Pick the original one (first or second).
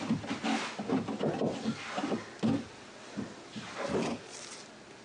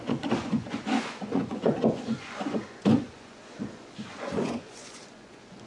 first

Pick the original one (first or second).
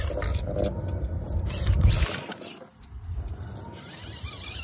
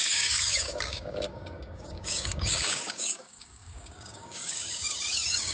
first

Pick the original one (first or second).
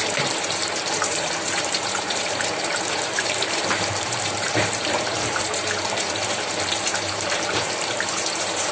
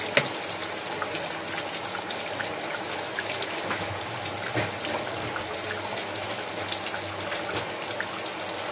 second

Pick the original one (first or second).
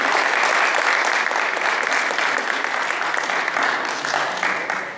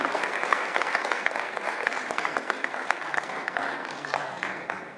first